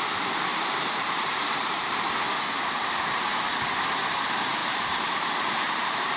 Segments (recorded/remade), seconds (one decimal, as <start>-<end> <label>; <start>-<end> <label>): 0.0-0.5 recorded; 0.5-2.0 remade; 2.0-4.6 recorded; 4.6-6.2 remade